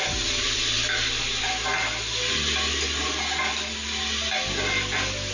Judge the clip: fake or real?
real